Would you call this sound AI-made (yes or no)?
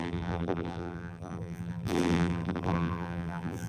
yes